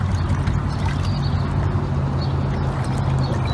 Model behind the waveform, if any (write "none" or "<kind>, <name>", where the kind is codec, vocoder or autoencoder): none